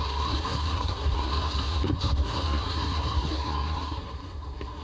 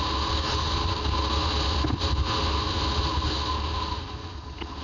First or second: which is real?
second